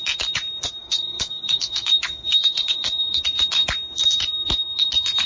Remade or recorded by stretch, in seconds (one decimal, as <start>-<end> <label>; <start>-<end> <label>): 0.0-0.8 recorded; 0.8-3.2 remade; 3.2-5.3 recorded